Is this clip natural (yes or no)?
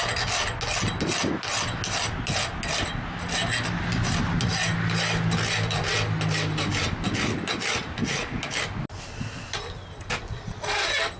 yes